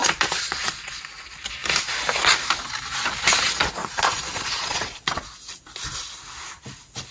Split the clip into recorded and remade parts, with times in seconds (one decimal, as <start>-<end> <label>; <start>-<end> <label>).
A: 0.0-1.0 remade; 1.0-3.8 recorded; 3.8-5.6 remade; 5.6-7.1 recorded